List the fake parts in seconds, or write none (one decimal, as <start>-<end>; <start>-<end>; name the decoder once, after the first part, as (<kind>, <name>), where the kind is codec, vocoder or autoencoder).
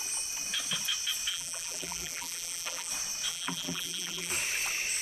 1.3-2.9 (vocoder, BigVGAN v2); 3.3-4.3